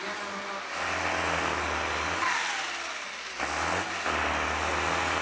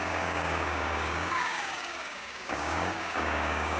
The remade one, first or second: second